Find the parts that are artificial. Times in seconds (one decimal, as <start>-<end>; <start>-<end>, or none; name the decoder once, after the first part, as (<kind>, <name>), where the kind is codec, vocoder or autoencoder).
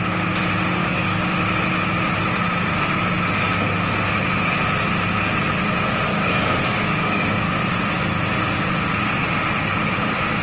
0.8-1.4 (codec, DAC); 6.1-7.9